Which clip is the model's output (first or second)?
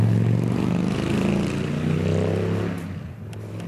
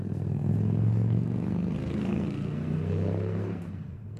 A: second